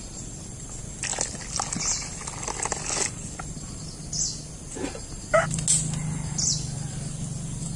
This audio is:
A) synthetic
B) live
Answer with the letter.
B